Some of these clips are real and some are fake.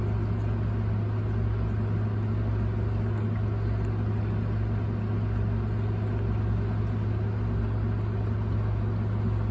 real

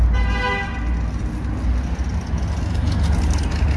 real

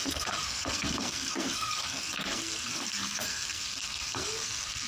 fake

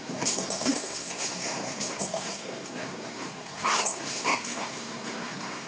fake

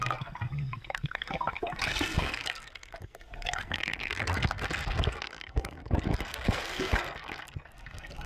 fake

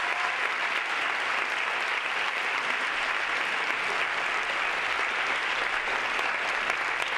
real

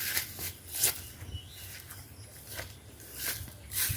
real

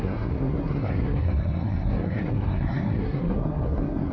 fake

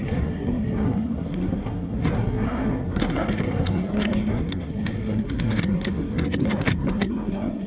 fake